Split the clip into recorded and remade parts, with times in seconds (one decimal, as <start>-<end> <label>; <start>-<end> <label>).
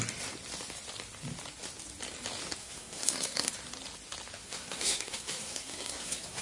0.0-2.6 recorded; 2.6-3.5 remade; 3.5-4.4 recorded; 4.4-6.4 remade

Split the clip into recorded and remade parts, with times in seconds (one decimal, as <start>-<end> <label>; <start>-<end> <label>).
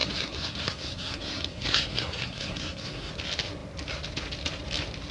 0.0-3.1 remade; 3.1-5.1 recorded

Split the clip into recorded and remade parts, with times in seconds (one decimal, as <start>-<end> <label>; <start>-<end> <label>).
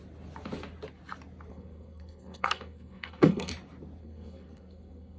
0.0-1.5 recorded; 1.5-3.5 remade; 3.5-4.0 recorded; 4.0-5.2 remade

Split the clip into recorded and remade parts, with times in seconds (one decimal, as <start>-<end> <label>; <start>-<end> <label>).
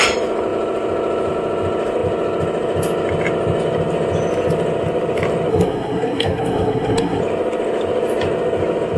0.0-5.5 recorded; 5.5-7.2 remade; 7.2-9.0 recorded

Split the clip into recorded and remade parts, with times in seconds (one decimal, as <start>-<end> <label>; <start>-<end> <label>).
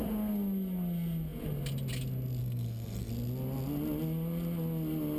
0.0-2.4 recorded; 2.4-3.1 remade; 3.1-5.2 recorded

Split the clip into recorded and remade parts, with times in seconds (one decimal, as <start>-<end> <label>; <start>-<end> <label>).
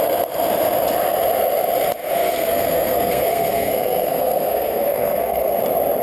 0.0-2.0 recorded; 2.0-5.6 remade; 5.6-6.0 recorded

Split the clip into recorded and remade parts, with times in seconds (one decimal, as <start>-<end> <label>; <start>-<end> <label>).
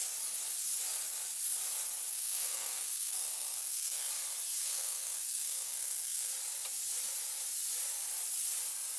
0.0-2.1 recorded; 2.1-4.1 remade; 4.1-4.6 recorded; 4.6-6.3 remade; 6.3-9.0 recorded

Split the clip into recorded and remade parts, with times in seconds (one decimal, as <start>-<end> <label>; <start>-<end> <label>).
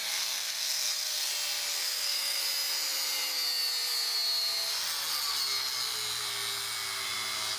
0.0-1.3 remade; 1.3-1.8 recorded; 1.8-2.4 remade; 2.4-7.6 recorded